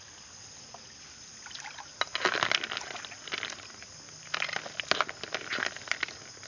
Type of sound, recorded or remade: recorded